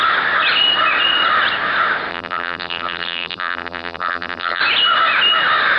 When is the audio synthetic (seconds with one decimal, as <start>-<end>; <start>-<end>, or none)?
2.1-4.6